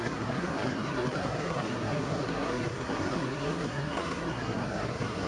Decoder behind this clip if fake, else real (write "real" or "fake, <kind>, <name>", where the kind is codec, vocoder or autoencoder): fake, codec, SNAC